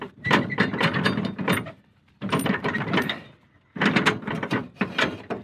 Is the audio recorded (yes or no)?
no